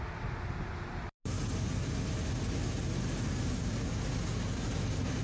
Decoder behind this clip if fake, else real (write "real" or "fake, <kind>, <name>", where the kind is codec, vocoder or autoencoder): real